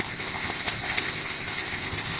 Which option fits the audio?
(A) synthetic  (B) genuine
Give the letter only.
A